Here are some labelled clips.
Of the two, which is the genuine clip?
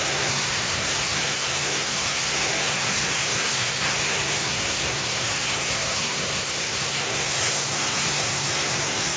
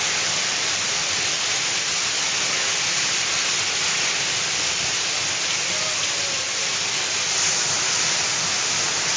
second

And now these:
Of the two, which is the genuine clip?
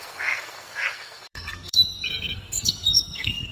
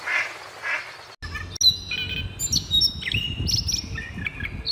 second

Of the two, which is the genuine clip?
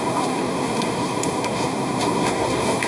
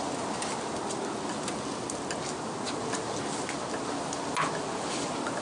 second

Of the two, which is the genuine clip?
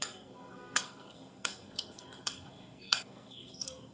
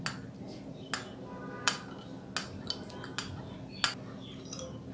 second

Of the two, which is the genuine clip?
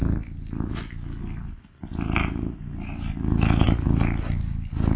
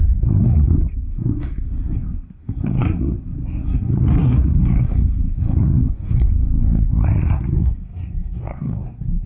first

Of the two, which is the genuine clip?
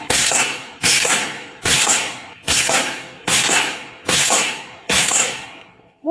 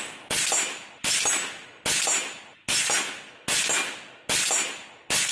second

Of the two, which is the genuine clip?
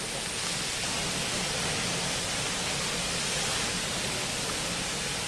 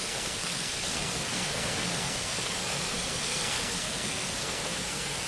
first